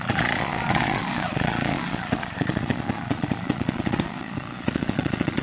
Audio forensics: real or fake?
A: fake